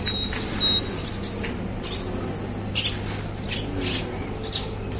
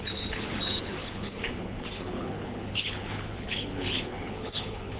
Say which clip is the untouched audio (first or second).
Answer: first